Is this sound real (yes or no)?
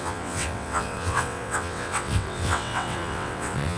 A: no